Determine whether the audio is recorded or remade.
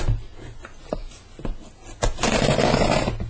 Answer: recorded